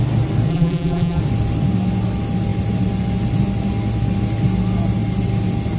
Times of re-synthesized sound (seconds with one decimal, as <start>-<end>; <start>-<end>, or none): 0.5-1.2